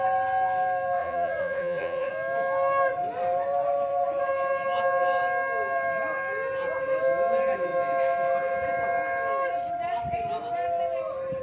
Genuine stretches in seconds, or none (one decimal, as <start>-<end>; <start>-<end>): 0.0-1.0; 2.1-11.4

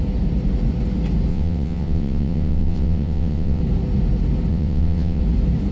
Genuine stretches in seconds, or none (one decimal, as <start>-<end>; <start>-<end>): 0.0-1.3; 3.6-4.5; 5.2-5.7

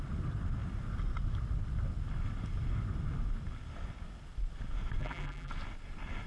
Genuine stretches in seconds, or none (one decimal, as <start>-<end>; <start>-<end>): 0.0-5.0; 5.5-6.3

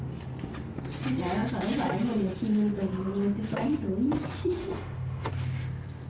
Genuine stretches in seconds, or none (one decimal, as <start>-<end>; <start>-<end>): 0.0-4.6; 5.3-6.1

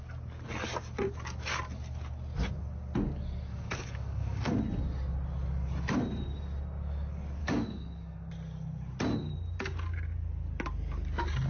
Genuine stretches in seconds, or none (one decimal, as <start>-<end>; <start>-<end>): 0.0-3.5; 4.5-7.4; 8.3-11.5

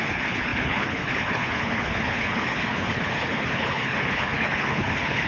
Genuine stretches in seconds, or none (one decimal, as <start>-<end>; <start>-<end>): none